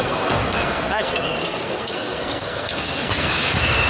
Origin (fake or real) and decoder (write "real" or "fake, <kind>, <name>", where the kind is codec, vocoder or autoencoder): fake, codec, SNAC